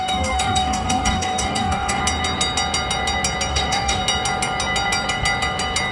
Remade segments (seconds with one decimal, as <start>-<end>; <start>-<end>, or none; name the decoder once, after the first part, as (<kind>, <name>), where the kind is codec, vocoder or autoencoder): 0.0-2.0 (codec, DAC); 3.5-4.0